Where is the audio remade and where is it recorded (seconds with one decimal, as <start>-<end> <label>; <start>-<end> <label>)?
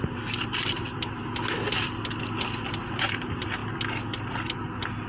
0.0-1.2 remade; 1.2-2.9 recorded; 2.9-3.6 remade; 3.6-5.1 recorded